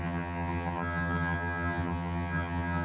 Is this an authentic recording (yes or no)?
no